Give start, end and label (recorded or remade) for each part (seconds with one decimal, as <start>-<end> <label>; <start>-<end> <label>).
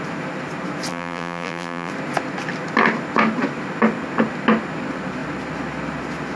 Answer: 0.0-0.9 recorded; 0.9-1.9 remade; 1.9-6.4 recorded